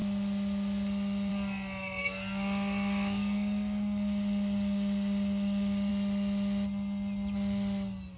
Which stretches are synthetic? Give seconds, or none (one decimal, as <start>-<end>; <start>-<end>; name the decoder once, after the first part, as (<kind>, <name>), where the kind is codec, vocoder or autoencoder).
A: 2.0-5.9 (codec, DAC)